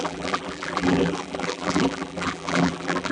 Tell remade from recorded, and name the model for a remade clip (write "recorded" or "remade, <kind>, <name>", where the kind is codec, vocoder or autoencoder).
remade, vocoder, BigVGAN v2